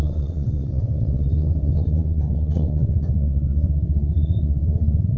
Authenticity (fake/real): fake